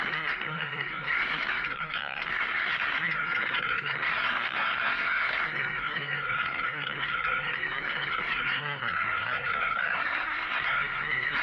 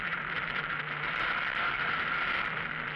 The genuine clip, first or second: second